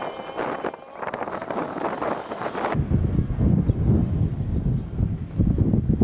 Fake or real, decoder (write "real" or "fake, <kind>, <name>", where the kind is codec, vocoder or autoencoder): real